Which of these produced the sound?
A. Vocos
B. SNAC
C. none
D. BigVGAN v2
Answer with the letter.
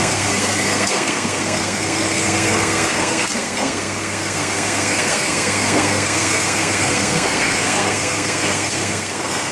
B